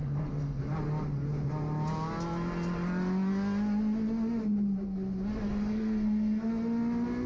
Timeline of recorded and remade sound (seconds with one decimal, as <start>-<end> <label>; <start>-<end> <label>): 0.0-0.6 remade; 0.6-5.5 recorded; 5.5-6.5 remade; 6.5-7.3 recorded